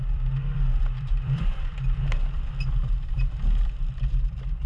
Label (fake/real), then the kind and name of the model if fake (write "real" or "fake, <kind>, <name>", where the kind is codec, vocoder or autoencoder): fake, vocoder, BigVGAN v2